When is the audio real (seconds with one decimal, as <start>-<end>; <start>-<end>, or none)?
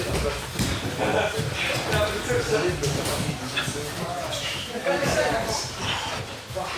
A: 0.0-4.1; 5.3-6.8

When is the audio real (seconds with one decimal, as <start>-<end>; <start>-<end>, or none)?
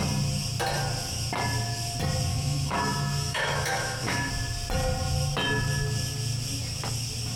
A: 0.0-2.3; 4.3-7.4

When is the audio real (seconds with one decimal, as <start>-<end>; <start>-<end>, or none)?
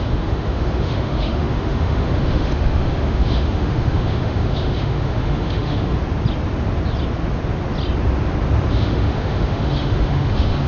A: 6.0-8.7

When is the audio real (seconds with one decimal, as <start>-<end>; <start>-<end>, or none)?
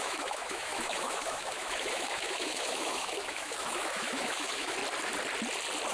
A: 4.8-5.9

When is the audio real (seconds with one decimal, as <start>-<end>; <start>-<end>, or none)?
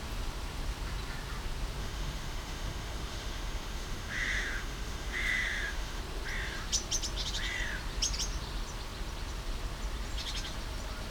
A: 0.0-1.8; 6.0-11.1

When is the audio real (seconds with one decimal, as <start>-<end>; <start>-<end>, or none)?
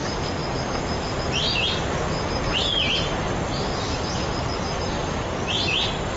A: 0.0-6.2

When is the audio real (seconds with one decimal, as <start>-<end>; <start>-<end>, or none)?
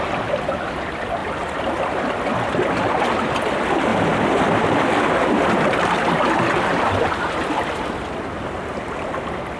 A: 0.0-9.6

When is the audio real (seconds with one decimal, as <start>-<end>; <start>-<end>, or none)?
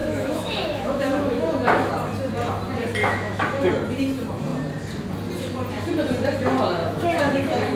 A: 1.9-3.0; 3.7-6.8